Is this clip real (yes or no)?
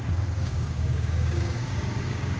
no